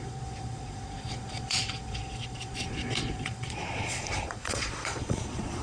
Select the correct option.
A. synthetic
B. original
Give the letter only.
A